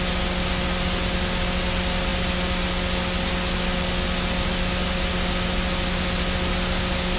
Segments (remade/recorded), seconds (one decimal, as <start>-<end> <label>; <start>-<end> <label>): 0.0-7.2 recorded